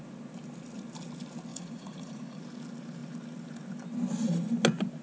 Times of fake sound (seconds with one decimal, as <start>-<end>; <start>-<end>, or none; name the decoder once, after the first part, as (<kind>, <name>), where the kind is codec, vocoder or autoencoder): 1.5-2.4 (vocoder, Vocos)